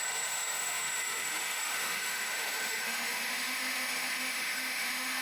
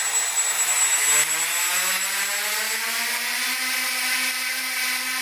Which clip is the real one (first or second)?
second